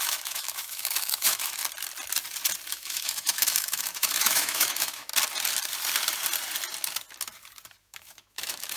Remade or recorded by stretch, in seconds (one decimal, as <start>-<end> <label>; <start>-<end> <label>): 0.0-1.6 remade; 1.6-2.7 recorded; 2.7-5.1 remade; 5.1-7.8 recorded; 7.8-8.8 remade